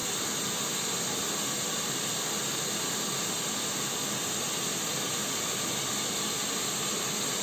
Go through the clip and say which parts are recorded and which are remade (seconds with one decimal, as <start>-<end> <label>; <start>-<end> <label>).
0.0-7.4 recorded